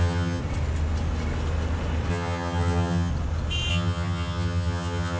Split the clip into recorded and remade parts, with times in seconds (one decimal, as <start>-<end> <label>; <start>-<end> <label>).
0.0-0.4 remade; 0.4-2.1 recorded; 2.1-3.1 remade; 3.1-3.7 recorded; 3.7-5.2 remade